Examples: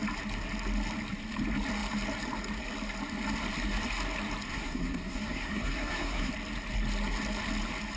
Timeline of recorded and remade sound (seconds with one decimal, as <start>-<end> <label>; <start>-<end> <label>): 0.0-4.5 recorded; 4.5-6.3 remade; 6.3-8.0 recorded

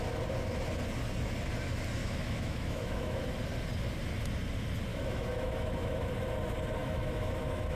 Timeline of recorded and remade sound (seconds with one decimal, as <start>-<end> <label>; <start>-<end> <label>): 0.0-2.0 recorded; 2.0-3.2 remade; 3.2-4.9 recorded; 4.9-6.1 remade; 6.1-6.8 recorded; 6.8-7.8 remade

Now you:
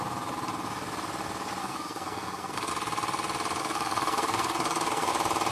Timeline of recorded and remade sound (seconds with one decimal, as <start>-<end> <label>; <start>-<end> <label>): 0.0-1.6 recorded; 1.6-2.7 remade; 2.7-3.6 recorded; 3.6-5.1 remade; 5.1-5.5 recorded

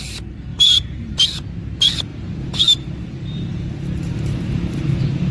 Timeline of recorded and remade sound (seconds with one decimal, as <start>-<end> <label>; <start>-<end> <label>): 0.0-0.5 recorded; 0.5-1.0 remade; 1.0-2.1 recorded; 2.1-5.3 remade

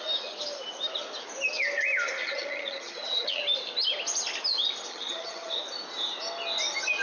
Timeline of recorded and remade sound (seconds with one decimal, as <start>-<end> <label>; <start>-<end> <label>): 0.0-2.2 recorded; 2.2-3.4 remade; 3.4-4.9 recorded; 4.9-5.6 remade; 5.6-7.0 recorded